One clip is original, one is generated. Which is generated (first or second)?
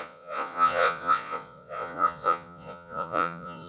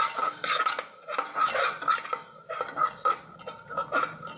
first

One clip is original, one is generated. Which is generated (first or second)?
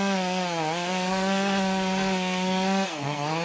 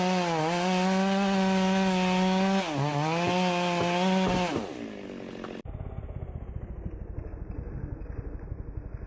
first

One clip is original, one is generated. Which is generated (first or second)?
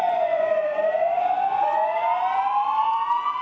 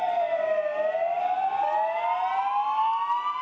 first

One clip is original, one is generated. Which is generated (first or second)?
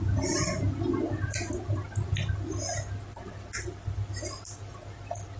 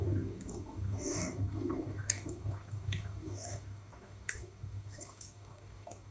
second